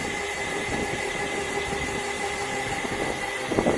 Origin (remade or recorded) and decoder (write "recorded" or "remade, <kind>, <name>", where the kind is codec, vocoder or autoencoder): recorded